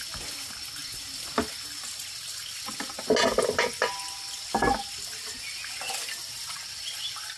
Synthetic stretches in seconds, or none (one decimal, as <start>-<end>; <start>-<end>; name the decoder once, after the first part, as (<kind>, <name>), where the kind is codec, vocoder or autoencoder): none